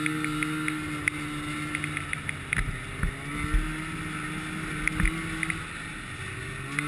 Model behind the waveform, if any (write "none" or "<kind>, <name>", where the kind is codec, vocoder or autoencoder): none